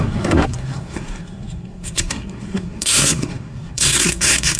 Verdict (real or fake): fake